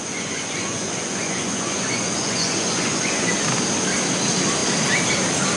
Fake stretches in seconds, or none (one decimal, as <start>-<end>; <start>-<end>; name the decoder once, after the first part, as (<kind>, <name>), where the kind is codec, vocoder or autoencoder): 0.0-3.3 (vocoder, Vocos)